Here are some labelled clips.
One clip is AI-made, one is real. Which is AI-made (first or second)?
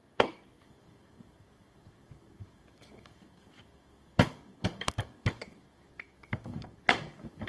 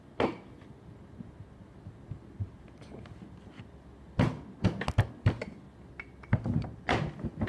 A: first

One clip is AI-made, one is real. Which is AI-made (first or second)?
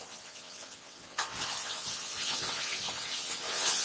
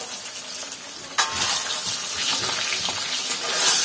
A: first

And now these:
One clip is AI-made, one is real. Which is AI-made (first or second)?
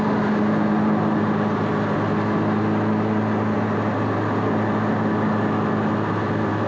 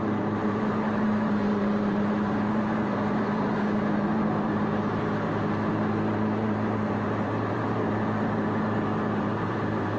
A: second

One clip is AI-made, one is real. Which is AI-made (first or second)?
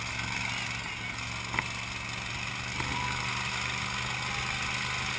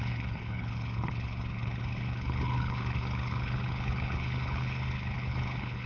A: second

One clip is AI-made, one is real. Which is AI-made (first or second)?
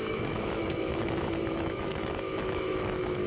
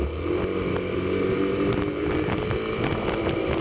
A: first